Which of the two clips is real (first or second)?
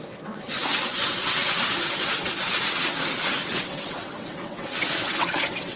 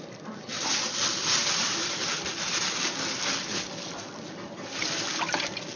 second